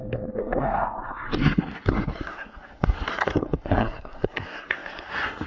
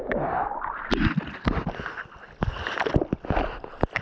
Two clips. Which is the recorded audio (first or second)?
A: second